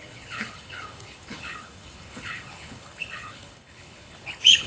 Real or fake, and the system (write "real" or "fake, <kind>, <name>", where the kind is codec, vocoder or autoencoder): fake, codec, HILCodec